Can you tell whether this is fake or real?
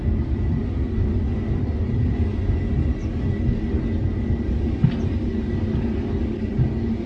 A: real